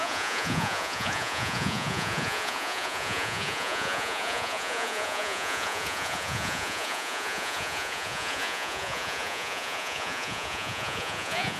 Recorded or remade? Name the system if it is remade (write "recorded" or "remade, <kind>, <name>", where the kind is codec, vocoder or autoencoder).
remade, vocoder, Vocos